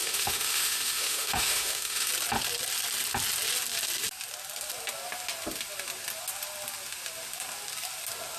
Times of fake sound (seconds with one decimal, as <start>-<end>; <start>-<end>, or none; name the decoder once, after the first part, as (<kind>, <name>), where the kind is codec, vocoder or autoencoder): 0.0-2.1 (autoencoder, DAC-VAE)